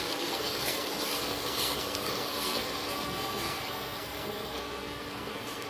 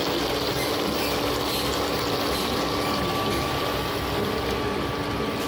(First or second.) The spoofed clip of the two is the first